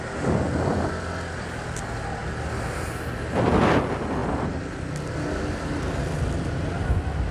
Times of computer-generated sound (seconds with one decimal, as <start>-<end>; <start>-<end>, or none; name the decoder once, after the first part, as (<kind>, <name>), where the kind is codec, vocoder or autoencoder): none